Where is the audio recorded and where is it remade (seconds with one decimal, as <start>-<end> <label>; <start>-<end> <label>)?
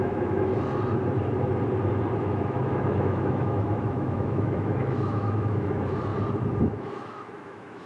0.0-0.5 remade; 0.5-2.2 recorded; 2.2-6.1 remade; 6.1-6.6 recorded; 6.6-7.9 remade